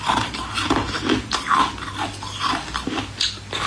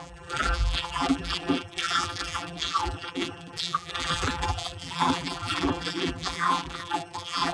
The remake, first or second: second